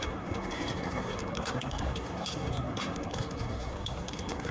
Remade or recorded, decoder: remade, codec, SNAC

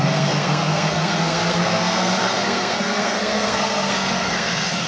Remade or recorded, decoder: remade, codec, SNAC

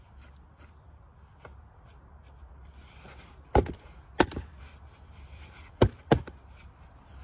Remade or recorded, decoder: recorded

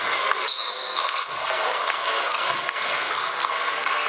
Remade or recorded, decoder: remade, codec, SNAC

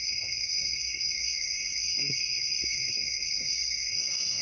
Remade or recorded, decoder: remade, codec, SNAC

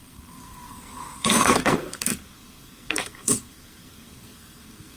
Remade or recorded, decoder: remade, codec, SNAC